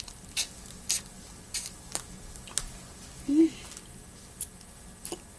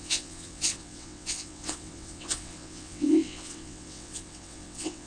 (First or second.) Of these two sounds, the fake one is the second